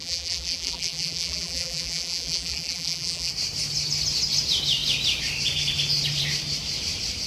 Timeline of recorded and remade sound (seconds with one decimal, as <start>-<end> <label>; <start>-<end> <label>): 0.0-3.3 remade; 3.3-7.3 recorded